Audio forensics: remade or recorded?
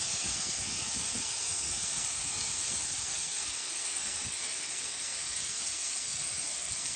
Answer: remade